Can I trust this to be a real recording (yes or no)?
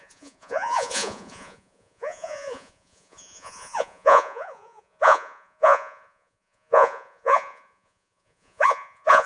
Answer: no